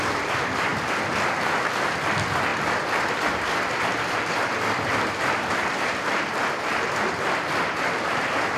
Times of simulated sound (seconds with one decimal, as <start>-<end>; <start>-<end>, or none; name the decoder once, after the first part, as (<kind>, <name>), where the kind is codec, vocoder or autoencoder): 0.0-8.6 (vocoder, BigVGAN v2)